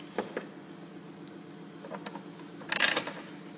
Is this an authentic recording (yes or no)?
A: yes